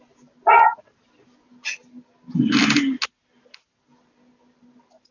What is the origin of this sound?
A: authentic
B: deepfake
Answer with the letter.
A